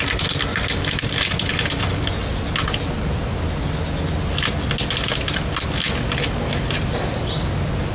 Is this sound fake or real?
real